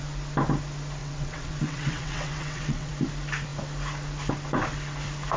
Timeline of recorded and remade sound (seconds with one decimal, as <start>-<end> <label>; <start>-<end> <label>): 0.0-1.0 recorded; 1.0-2.9 remade; 2.9-5.4 recorded